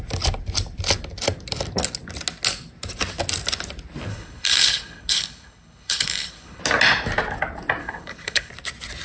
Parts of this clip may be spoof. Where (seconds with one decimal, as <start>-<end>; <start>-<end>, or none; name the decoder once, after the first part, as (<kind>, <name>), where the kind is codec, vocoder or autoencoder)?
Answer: 4.1-6.6 (codec, HILCodec); 7.8-8.5